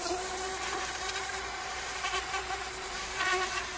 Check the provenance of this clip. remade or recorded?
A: remade